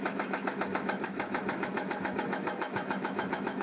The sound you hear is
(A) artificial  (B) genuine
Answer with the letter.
A